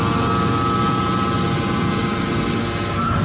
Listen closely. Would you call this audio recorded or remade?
recorded